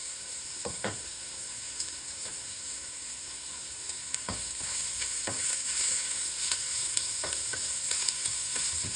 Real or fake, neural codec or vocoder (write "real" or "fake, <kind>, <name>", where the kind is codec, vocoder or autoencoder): fake, codec, SNAC